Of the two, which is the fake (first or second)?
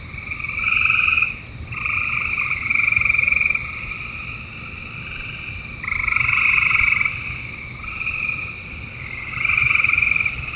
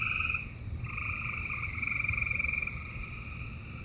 first